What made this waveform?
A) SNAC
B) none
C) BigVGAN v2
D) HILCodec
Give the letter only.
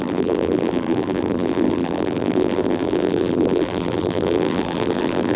C